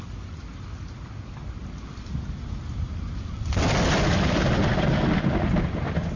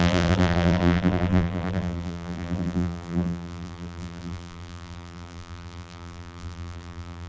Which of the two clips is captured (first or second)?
first